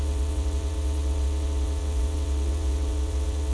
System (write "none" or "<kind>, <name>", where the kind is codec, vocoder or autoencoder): vocoder, WaveNeXt